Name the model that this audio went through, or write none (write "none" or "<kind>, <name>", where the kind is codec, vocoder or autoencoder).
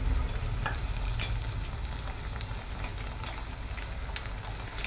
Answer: none